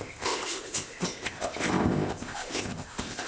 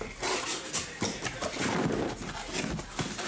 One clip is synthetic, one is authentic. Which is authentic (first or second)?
second